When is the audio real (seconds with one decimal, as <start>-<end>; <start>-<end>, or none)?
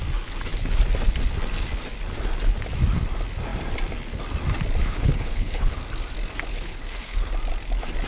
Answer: 0.0-4.8; 5.8-6.5; 7.3-8.1